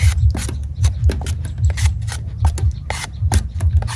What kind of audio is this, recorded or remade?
recorded